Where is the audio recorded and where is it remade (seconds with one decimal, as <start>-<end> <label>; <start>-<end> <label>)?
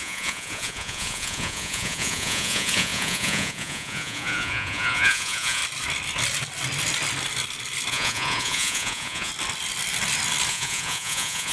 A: 0.0-5.6 remade; 5.6-7.9 recorded; 7.9-9.3 remade; 9.3-10.5 recorded; 10.5-11.5 remade